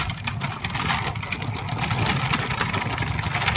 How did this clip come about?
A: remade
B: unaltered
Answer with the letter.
B